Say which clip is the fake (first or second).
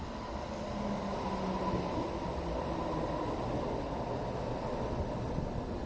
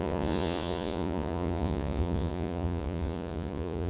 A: second